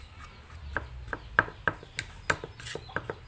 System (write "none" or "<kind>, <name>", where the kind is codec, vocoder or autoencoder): none